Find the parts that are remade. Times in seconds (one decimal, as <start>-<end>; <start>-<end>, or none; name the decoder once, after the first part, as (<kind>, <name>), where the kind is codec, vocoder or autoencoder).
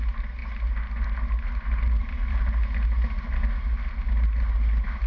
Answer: none